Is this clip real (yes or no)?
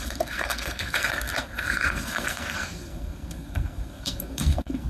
no